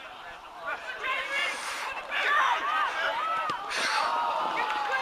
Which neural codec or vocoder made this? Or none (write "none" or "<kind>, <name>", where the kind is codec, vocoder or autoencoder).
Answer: vocoder, BigVGAN v2